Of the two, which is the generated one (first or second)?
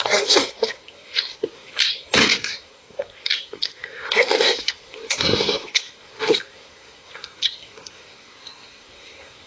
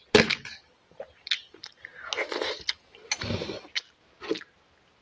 first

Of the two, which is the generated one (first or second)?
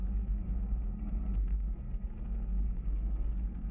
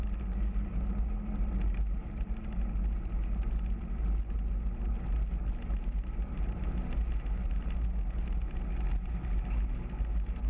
first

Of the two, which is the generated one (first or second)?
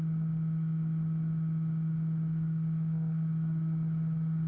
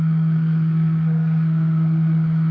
second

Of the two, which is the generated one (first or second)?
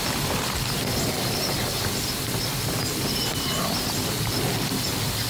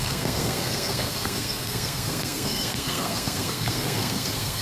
second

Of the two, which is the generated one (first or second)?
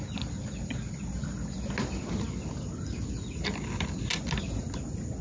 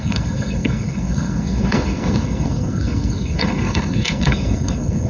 second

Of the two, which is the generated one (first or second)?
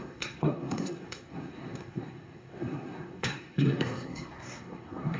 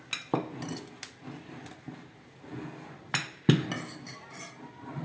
first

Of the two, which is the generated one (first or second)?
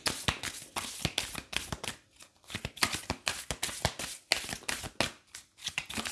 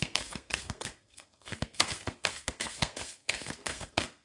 second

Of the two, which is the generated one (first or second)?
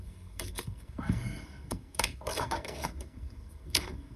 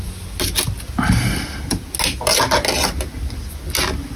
first